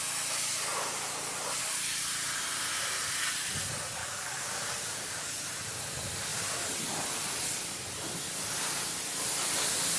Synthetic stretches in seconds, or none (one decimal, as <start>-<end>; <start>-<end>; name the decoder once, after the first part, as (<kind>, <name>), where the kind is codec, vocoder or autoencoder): 4.0-5.3 (codec, DAC)